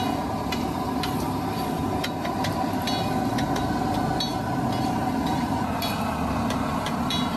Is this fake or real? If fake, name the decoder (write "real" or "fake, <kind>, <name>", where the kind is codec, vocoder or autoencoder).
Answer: real